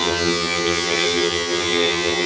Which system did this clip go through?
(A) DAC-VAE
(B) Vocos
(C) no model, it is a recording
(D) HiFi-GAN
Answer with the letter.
D